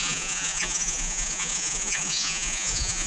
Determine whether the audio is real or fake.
fake